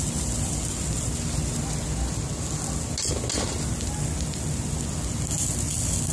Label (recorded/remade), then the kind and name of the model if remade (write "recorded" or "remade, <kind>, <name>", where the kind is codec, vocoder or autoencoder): recorded